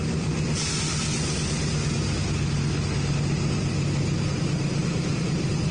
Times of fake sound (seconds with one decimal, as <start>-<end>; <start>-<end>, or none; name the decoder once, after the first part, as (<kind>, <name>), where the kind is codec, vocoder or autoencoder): 4.8-5.7 (vocoder, BigVGAN v2)